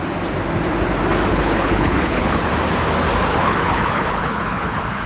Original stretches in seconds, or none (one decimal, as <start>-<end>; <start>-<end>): 0.0-1.3; 2.5-3.3